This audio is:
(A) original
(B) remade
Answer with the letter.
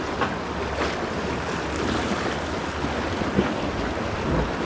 A